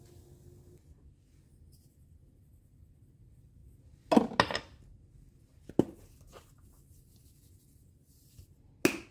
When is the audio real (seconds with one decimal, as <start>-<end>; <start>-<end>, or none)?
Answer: 0.0-9.1